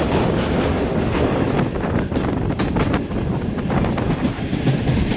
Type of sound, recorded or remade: recorded